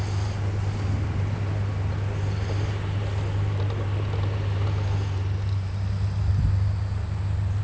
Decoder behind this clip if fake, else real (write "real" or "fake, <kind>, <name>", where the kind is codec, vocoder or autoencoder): real